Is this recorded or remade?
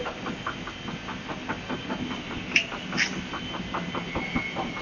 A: recorded